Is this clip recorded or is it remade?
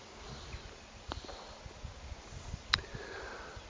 recorded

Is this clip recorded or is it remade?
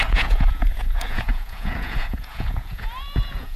remade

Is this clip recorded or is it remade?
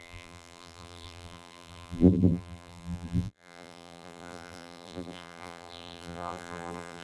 remade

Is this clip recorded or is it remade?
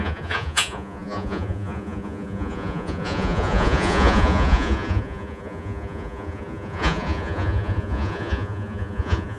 remade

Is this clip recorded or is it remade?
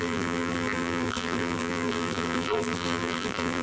remade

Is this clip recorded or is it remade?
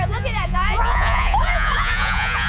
remade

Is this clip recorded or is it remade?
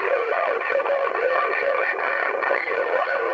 remade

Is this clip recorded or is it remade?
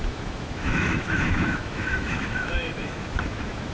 remade